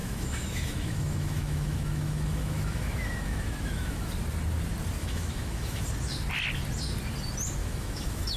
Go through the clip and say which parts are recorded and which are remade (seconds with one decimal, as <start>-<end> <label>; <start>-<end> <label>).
0.0-4.1 remade; 4.1-5.0 recorded; 5.0-5.8 remade; 5.8-7.6 recorded; 7.6-8.4 remade